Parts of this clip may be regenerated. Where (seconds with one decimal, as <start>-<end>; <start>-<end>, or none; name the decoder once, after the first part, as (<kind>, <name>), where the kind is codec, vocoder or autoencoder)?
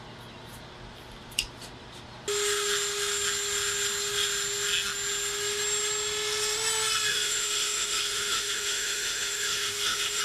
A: 7.1-10.2 (autoencoder, DAC-VAE)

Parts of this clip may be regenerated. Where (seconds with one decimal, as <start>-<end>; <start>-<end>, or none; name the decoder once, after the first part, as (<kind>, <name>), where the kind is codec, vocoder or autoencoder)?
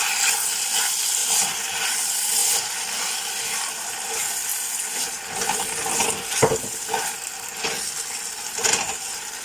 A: 1.2-1.7 (vocoder, BigVGAN v2); 2.4-3.9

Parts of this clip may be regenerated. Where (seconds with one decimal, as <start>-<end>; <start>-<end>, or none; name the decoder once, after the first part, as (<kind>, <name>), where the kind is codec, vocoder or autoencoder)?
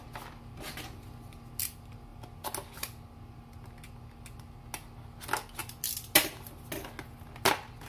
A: none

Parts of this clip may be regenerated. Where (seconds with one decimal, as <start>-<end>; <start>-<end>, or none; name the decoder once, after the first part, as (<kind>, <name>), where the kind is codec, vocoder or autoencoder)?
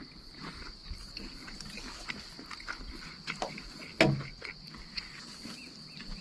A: none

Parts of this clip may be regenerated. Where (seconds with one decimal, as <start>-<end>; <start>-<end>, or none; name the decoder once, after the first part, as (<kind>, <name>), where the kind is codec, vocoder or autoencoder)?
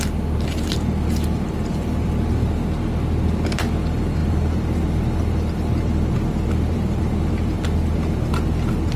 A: none